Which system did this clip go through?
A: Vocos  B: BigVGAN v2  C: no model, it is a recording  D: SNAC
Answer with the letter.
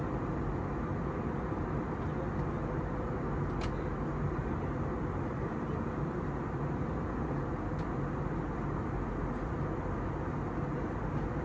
C